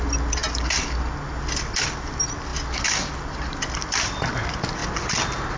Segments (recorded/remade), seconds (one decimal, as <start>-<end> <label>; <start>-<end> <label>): 0.0-5.6 recorded